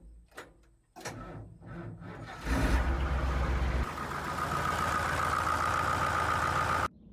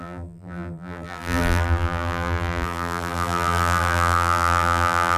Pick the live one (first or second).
first